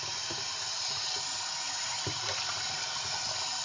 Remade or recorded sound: recorded